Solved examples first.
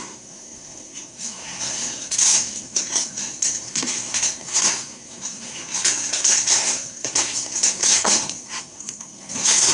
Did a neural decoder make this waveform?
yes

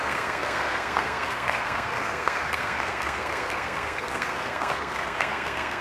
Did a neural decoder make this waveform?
yes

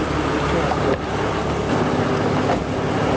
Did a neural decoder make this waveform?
no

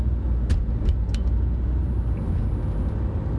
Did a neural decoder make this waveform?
no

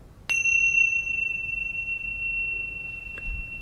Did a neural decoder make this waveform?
no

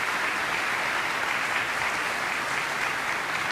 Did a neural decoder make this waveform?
no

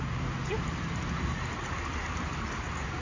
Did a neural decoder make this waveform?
no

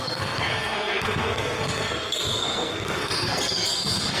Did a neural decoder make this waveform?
yes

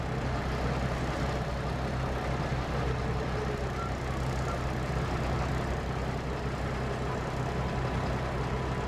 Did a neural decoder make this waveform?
no